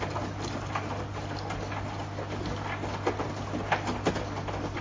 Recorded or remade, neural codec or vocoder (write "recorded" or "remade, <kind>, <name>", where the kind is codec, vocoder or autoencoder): recorded